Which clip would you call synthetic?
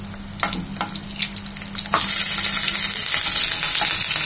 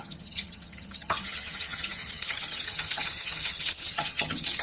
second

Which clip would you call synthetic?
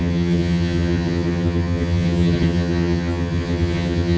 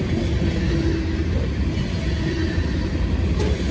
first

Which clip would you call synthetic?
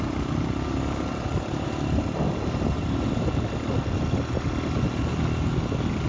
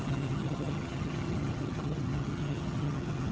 second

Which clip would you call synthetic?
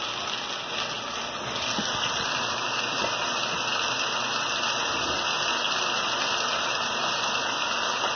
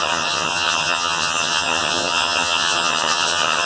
second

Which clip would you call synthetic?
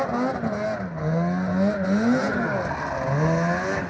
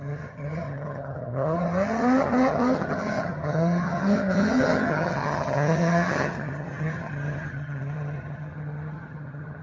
second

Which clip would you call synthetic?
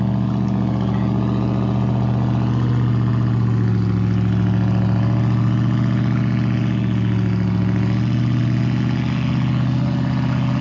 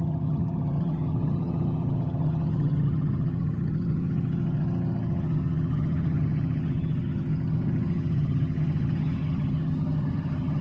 second